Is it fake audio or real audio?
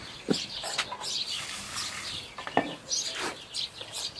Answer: real